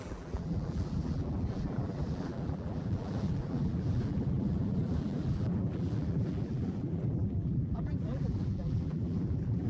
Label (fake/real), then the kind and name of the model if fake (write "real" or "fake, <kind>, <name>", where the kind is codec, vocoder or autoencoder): fake, vocoder, BigVGAN v2